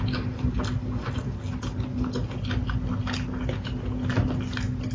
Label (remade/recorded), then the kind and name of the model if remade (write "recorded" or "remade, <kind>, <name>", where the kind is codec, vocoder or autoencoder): recorded